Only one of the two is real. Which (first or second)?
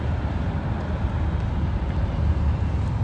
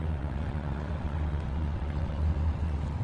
first